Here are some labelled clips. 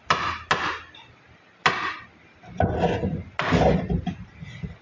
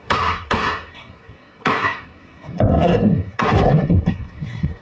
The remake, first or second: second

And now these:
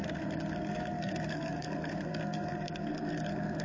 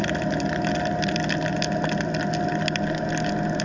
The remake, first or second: first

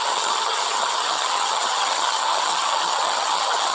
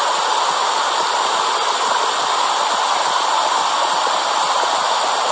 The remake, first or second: first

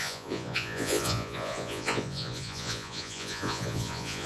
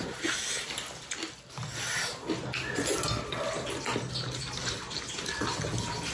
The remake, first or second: first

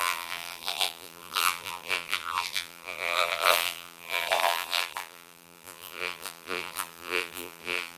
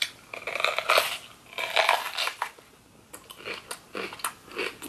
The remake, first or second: first